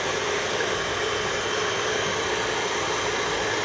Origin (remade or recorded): recorded